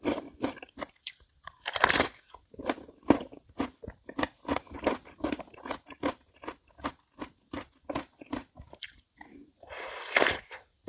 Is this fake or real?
real